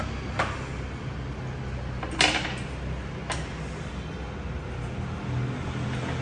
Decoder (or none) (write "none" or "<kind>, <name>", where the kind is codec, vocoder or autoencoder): none